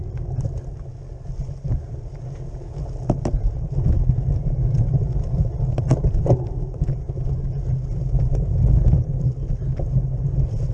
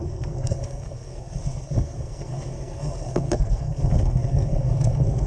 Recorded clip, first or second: first